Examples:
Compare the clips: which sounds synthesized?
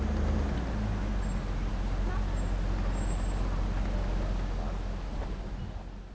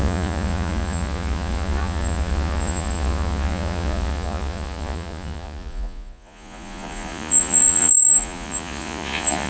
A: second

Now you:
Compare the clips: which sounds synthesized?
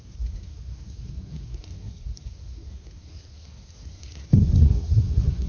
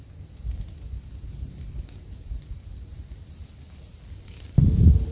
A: first